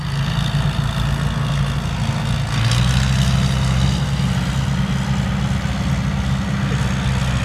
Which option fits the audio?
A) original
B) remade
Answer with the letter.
A